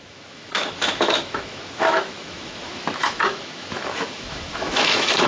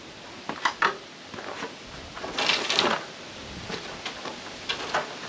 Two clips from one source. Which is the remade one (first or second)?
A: first